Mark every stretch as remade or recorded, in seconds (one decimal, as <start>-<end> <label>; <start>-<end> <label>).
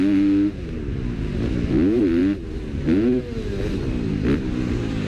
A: 0.0-5.1 recorded